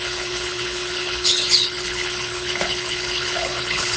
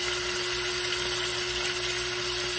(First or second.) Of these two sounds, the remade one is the first